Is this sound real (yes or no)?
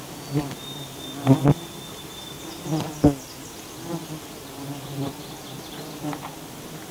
yes